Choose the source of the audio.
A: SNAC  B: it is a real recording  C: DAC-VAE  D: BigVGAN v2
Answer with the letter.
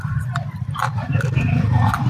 B